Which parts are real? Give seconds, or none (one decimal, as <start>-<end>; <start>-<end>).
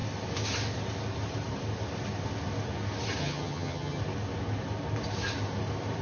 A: 0.0-3.2; 4.0-6.0